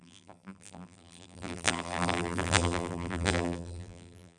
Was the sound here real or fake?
fake